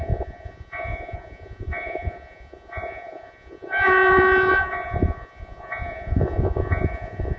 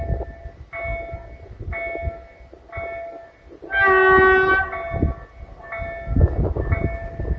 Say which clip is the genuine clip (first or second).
second